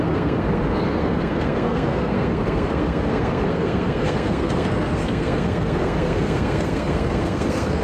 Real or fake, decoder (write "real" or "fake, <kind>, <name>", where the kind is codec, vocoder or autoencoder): fake, codec, SNAC